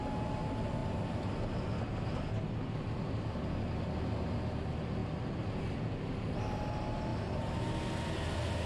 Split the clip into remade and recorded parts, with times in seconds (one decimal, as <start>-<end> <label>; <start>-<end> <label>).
0.0-8.7 recorded